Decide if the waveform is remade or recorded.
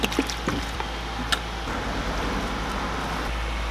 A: recorded